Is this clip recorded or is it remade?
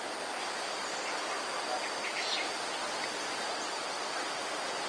recorded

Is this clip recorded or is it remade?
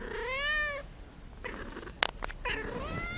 recorded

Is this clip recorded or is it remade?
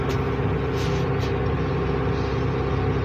recorded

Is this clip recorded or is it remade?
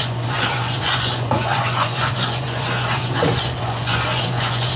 remade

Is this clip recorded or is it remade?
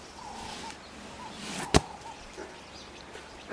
recorded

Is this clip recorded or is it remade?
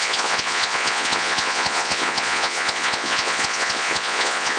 remade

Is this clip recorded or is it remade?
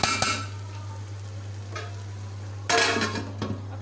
recorded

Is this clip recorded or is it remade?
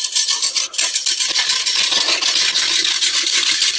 recorded